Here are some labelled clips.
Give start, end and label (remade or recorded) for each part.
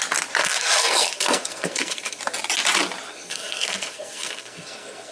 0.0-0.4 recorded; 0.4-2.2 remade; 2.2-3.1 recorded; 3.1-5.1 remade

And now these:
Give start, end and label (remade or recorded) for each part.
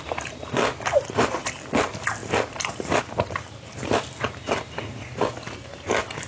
0.0-2.2 recorded; 2.2-3.0 remade; 3.0-6.3 recorded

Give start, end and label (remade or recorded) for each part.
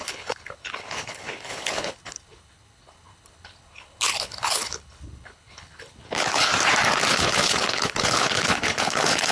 0.0-6.5 remade; 6.5-7.1 recorded; 7.1-9.3 remade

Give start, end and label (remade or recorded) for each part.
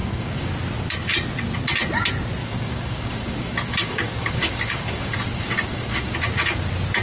0.0-0.5 remade; 0.5-2.4 recorded; 2.4-6.1 remade; 6.1-7.0 recorded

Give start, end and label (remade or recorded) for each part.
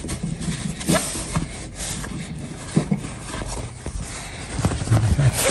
0.0-5.5 recorded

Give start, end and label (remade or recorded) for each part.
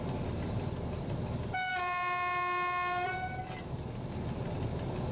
0.0-5.1 recorded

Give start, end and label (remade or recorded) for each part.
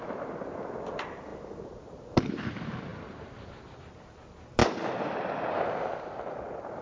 0.0-6.8 recorded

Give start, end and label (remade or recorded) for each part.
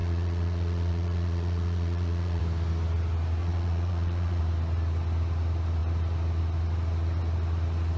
0.0-2.4 remade; 2.4-3.4 recorded; 3.4-4.4 remade; 4.4-8.0 recorded